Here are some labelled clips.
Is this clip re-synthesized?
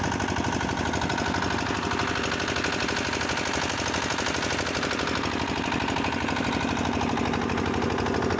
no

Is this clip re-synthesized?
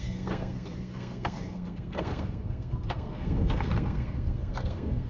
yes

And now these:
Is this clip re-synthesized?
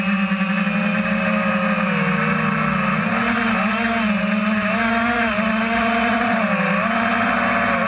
no